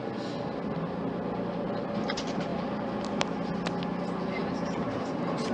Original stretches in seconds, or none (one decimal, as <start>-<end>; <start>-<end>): 0.0-4.4